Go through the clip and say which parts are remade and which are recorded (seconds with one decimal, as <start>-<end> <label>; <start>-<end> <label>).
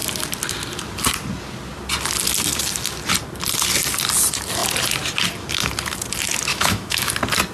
0.0-6.5 recorded; 6.5-7.1 remade; 7.1-7.5 recorded